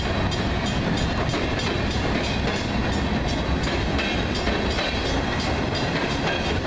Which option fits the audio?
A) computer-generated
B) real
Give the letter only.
B